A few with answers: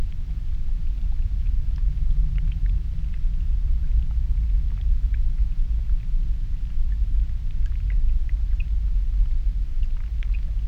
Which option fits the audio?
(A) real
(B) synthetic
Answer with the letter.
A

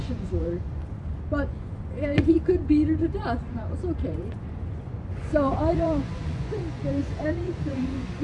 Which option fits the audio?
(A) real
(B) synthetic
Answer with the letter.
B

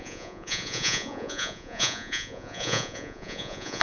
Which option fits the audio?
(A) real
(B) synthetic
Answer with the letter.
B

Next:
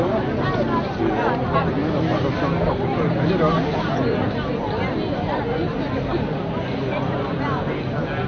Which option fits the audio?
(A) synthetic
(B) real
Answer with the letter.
B